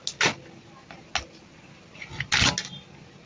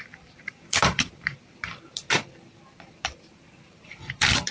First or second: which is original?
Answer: first